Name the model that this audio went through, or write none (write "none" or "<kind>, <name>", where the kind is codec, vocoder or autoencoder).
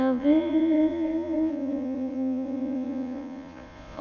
vocoder, Vocos